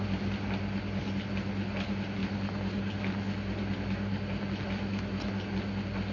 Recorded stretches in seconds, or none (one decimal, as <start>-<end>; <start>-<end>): 0.0-6.1